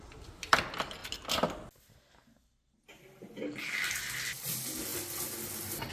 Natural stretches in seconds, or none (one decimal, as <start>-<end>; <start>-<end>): 0.0-5.9